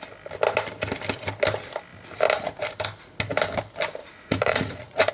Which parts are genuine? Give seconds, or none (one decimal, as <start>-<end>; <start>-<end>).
0.0-4.0